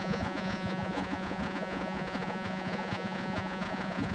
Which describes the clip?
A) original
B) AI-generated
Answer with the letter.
B